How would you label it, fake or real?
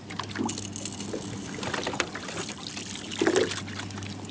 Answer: real